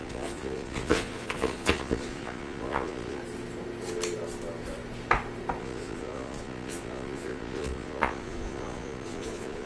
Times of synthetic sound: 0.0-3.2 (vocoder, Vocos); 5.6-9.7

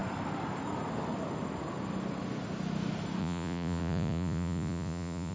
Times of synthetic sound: 3.2-5.3 (vocoder, Vocos)

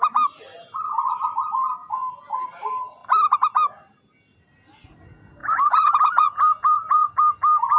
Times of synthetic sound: 1.8-2.4 (vocoder, Vocos); 5.4-7.2

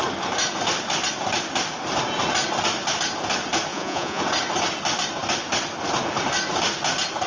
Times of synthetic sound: 3.7-4.2 (vocoder, Vocos)

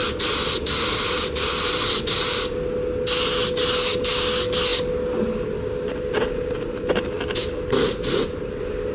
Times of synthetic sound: none

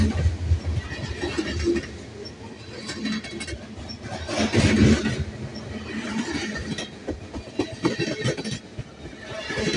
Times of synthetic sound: none